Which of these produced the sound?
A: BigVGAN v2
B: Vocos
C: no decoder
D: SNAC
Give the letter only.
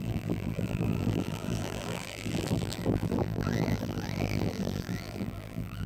A